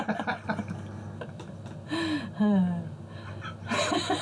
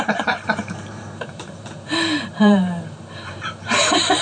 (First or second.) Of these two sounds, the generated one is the second